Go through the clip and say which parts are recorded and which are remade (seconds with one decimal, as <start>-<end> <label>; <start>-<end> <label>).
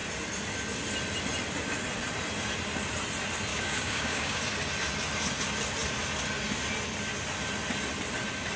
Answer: 0.0-3.5 recorded; 3.5-4.4 remade; 4.4-8.6 recorded